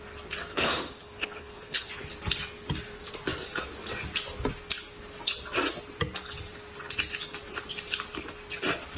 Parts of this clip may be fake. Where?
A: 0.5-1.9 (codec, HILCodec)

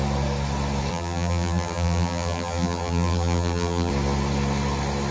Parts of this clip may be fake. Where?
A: 0.9-3.9 (vocoder, BigVGAN v2)

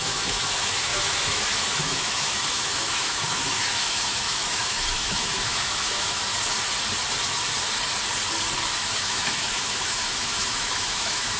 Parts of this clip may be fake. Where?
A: 0.0-6.2 (autoencoder, DAC-VAE); 8.8-11.4

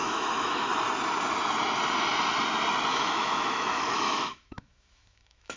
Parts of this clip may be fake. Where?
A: 0.0-0.7 (autoencoder, DAC-VAE); 2.9-5.6

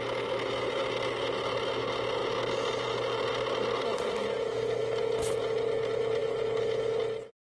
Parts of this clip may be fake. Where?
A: none

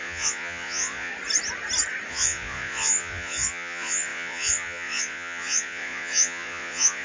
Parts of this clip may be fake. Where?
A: 0.0-1.1 (vocoder, Vocos); 2.1-7.0

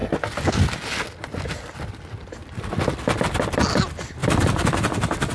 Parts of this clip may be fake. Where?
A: 4.2-5.3 (vocoder, BigVGAN v2)